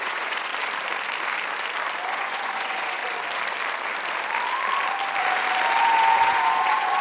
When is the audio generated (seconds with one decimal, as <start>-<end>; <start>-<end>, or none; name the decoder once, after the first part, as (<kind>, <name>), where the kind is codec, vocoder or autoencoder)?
0.0-0.5 (vocoder, Vocos); 2.1-3.0; 5.8-7.0